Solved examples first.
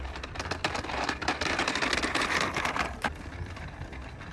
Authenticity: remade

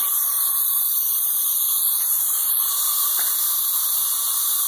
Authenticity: recorded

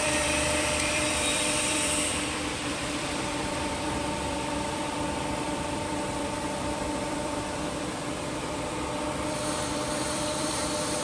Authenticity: remade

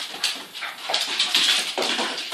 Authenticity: remade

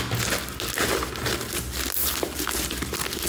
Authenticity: recorded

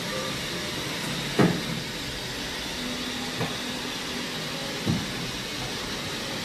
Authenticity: recorded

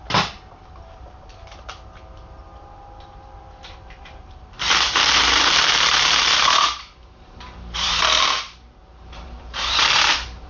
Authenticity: remade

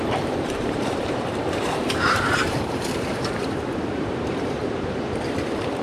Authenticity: remade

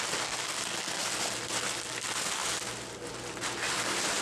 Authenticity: recorded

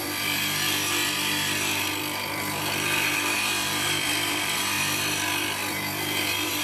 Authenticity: remade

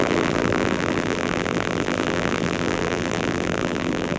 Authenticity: remade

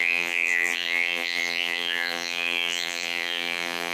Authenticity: remade